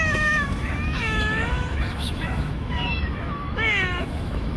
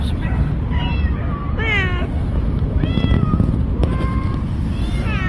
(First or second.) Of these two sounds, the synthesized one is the first